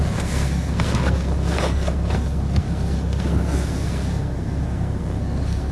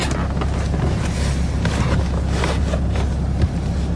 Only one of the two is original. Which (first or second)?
second